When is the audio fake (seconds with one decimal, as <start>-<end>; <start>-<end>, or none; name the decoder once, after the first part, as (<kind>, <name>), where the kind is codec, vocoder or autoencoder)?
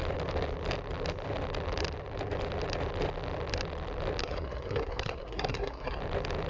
4.2-6.0 (codec, SNAC)